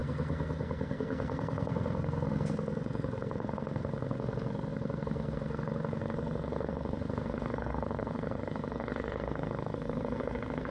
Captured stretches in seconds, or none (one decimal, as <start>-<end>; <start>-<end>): none

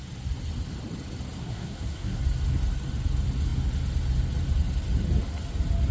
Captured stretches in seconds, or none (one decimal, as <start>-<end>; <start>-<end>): 0.0-1.4; 2.2-5.9

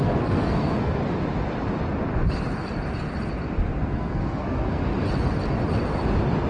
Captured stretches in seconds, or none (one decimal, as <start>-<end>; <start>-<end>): 1.0-3.9; 4.8-6.5

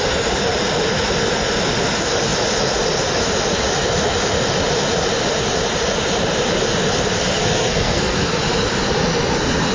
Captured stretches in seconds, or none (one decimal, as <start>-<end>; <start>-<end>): 0.0-7.2; 8.4-9.7

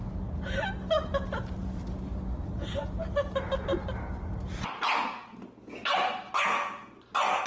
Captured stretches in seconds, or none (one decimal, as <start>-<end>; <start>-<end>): 0.0-7.5